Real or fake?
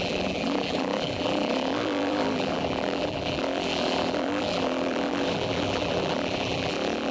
fake